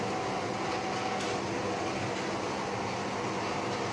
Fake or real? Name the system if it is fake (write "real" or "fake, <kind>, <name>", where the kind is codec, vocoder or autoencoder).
real